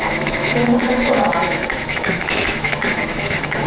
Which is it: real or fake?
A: fake